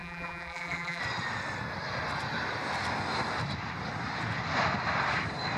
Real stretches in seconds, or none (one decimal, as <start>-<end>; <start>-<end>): 1.0-5.6